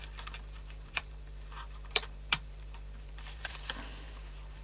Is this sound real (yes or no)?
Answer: no